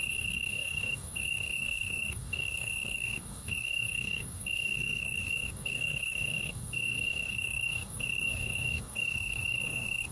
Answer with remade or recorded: remade